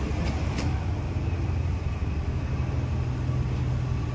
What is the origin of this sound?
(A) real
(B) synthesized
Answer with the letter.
A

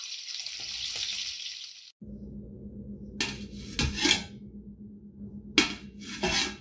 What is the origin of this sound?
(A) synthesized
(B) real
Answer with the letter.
B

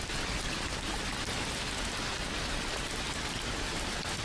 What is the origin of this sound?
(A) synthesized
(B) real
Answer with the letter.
B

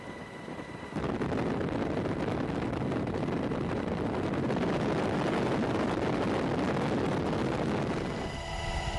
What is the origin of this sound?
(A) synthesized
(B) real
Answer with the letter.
B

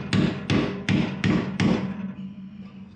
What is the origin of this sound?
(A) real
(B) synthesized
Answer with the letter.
A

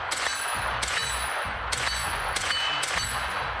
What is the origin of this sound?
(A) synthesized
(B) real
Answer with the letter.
A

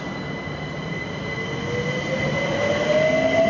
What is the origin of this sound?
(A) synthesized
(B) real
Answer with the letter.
B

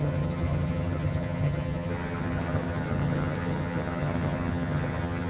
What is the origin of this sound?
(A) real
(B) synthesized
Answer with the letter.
B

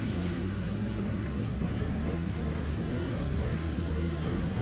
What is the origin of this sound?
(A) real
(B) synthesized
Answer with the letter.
B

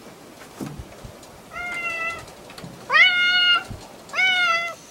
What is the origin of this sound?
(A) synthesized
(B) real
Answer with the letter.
B